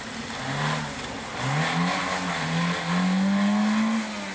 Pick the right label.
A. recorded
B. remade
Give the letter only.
A